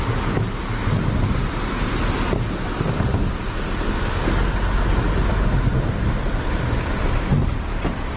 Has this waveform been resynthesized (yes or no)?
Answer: no